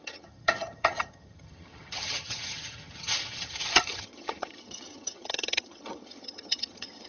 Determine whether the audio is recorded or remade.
remade